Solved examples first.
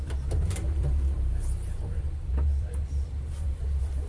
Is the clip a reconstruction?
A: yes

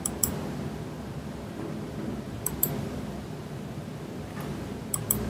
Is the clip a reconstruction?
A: yes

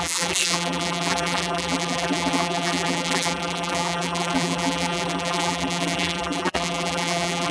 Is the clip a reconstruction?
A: yes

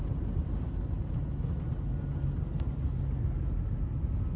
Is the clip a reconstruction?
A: no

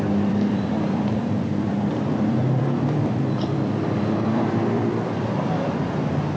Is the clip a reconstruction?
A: yes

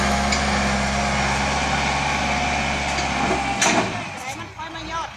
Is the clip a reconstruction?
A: no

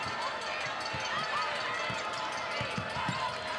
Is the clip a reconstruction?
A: no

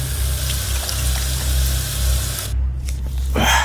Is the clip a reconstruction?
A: no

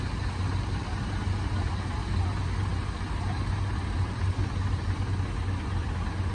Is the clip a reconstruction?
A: no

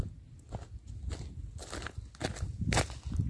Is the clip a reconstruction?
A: no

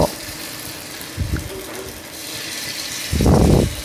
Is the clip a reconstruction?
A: yes